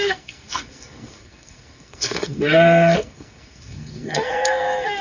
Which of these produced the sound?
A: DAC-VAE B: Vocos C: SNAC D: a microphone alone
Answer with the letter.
C